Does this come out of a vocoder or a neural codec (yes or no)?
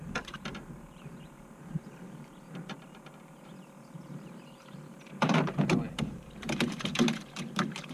yes